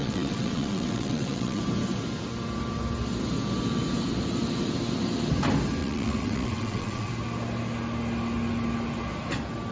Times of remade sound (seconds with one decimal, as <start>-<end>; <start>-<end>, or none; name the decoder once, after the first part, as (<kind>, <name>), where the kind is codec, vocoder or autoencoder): 0.0-1.6 (vocoder, WaveNeXt); 5.8-7.1